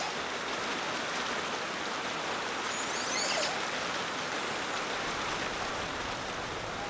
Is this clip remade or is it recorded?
recorded